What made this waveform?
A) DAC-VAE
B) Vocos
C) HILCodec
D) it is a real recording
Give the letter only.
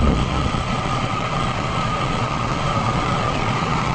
B